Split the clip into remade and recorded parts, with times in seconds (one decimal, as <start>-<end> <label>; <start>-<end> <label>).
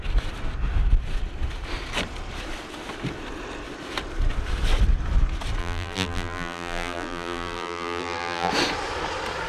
0.0-5.6 recorded; 5.6-8.5 remade; 8.5-9.5 recorded